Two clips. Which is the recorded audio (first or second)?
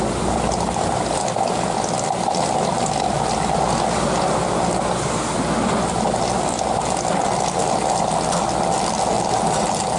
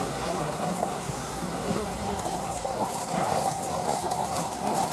first